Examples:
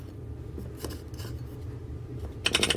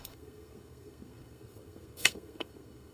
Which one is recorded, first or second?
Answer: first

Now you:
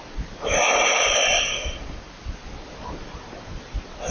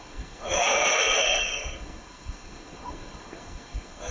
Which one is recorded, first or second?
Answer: first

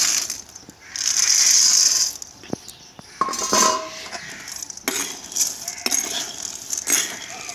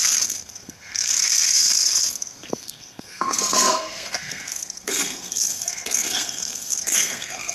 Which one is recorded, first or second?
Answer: first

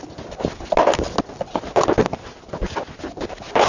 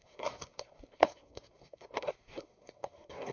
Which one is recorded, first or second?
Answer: first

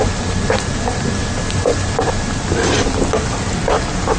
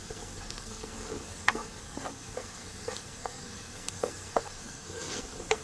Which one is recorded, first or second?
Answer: first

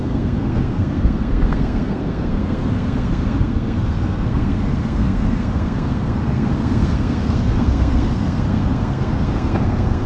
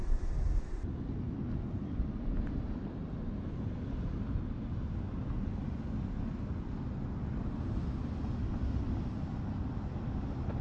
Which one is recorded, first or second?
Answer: second